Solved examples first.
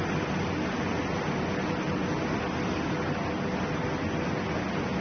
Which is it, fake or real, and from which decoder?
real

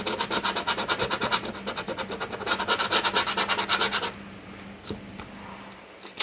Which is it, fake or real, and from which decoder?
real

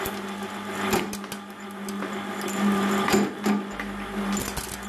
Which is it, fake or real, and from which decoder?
real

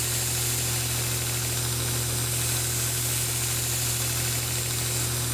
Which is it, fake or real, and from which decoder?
real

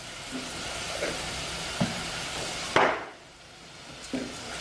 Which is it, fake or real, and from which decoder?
real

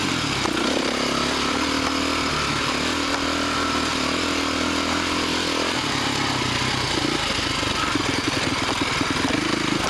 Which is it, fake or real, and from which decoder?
real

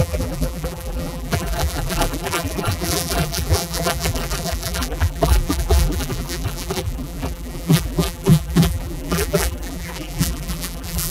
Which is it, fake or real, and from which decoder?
fake, vocoder, BigVGAN v2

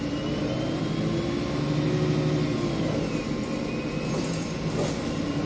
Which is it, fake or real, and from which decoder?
real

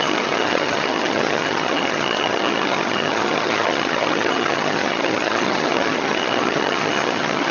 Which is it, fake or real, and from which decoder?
fake, vocoder, HiFi-GAN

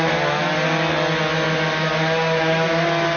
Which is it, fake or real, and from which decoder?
real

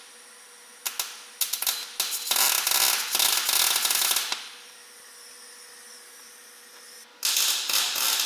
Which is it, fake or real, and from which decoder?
real